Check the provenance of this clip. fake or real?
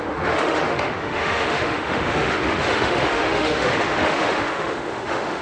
fake